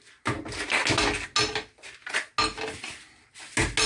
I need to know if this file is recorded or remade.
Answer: recorded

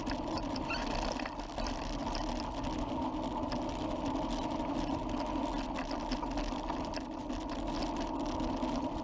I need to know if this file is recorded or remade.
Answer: recorded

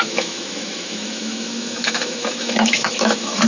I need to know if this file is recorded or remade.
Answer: remade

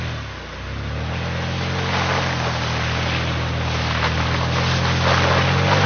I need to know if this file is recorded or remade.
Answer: recorded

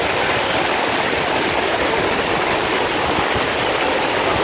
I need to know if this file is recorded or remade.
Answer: recorded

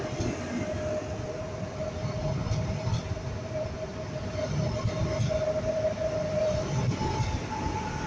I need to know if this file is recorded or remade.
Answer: recorded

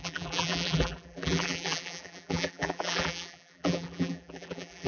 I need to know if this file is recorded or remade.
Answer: remade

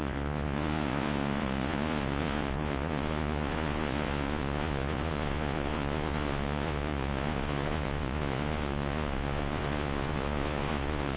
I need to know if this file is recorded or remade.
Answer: remade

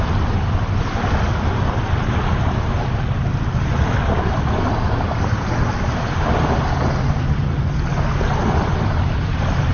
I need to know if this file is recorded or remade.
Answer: recorded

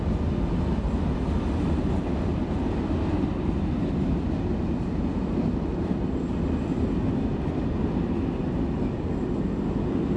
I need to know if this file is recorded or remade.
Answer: recorded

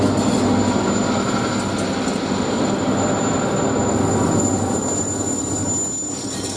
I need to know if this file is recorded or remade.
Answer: recorded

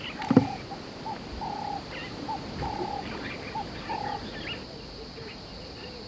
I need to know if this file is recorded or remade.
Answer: remade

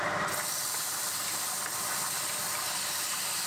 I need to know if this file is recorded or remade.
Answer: recorded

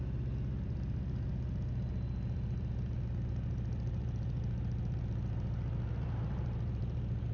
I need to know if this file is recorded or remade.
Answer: recorded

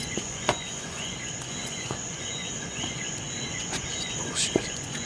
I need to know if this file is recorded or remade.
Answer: remade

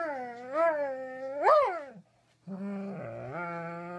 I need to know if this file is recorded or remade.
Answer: recorded